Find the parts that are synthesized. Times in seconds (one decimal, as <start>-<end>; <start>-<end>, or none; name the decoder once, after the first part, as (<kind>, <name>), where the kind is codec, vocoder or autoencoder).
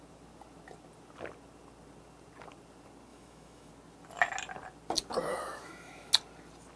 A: 3.1-3.7 (autoencoder, DAC-VAE); 5.3-6.1